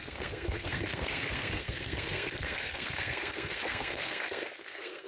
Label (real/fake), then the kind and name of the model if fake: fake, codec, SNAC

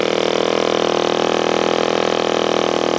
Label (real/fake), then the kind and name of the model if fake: real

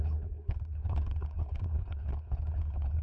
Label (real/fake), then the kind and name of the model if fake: fake, codec, HILCodec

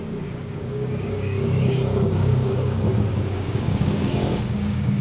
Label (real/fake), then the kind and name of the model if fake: fake, codec, DAC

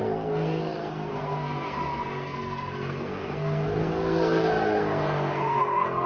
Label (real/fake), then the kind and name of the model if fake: fake, codec, SNAC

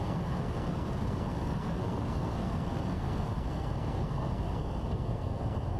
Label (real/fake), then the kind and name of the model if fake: fake, codec, SNAC